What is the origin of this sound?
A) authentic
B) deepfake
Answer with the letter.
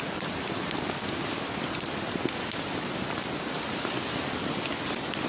A